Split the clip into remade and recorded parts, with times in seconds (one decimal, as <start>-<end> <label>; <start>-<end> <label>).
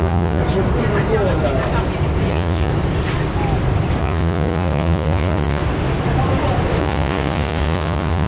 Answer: 0.0-0.4 remade; 0.4-2.3 recorded; 2.3-2.7 remade; 2.7-4.0 recorded; 4.0-5.6 remade; 5.6-6.8 recorded; 6.8-8.3 remade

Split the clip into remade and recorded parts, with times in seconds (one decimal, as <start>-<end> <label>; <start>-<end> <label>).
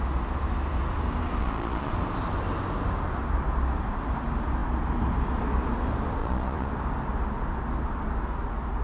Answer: 0.0-1.4 recorded; 1.4-1.9 remade; 1.9-6.2 recorded; 6.2-6.7 remade; 6.7-8.8 recorded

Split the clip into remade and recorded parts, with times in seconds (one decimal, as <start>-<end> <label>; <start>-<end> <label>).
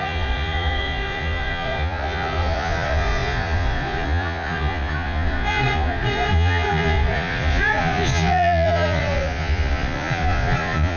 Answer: 0.0-11.0 remade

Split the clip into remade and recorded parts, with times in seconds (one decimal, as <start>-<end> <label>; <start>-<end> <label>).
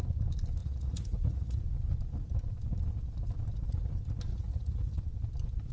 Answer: 0.0-0.6 recorded; 0.6-1.6 remade; 1.6-4.3 recorded; 4.3-5.0 remade; 5.0-5.7 recorded